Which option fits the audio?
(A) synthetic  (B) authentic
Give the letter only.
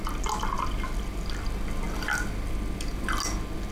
B